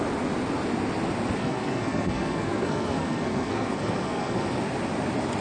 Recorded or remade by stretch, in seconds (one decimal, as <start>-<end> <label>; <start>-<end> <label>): 0.0-1.4 recorded; 1.4-4.6 remade; 4.6-5.4 recorded